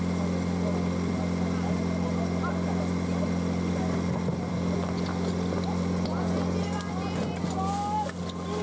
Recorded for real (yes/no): yes